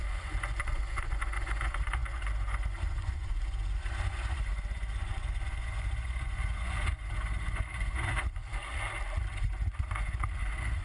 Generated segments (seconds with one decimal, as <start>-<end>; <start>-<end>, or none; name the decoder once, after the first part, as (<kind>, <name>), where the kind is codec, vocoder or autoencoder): 0.0-8.7 (vocoder, Vocos); 9.3-10.8